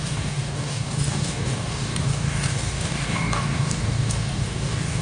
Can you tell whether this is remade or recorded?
remade